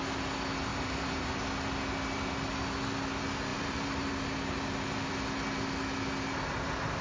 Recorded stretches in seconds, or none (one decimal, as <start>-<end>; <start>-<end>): 0.0-0.7; 1.3-3.5; 4.1-7.0